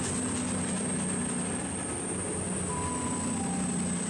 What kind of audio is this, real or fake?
real